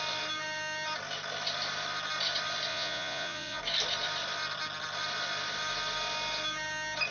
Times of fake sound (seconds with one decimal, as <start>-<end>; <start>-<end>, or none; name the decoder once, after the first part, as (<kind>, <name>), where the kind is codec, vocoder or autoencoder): 2.7-3.6 (vocoder, Vocos)

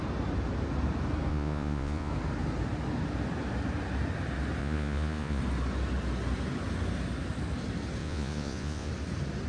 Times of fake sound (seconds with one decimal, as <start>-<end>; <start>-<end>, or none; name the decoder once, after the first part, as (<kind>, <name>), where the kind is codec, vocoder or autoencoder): 1.3-2.1 (vocoder, Vocos); 4.6-5.4; 8.0-8.9

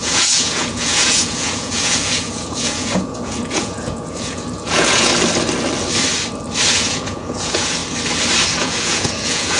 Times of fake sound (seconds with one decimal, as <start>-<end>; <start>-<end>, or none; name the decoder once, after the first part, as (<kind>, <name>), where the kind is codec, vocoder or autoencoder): 0.0-5.1 (vocoder, Vocos); 6.7-7.8; 8.6-9.6

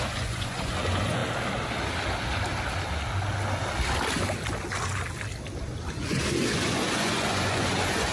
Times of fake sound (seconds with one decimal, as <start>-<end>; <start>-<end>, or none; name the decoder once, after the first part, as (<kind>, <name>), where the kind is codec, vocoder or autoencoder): 0.0-1.2 (vocoder, Vocos); 5.9-8.1

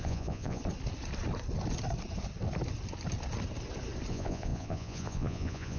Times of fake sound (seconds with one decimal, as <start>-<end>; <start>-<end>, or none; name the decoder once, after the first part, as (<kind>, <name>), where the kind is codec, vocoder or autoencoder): 0.0-0.6 (vocoder, Vocos); 4.1-5.8

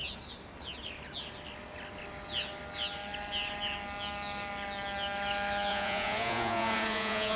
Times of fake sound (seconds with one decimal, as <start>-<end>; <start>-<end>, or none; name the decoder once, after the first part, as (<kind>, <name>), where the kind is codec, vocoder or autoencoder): 5.7-7.4 (vocoder, Vocos)